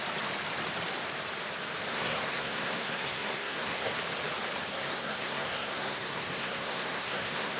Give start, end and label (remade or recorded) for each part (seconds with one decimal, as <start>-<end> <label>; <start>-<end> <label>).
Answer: 0.0-1.9 recorded; 1.9-3.9 remade; 3.9-4.7 recorded; 4.7-7.6 remade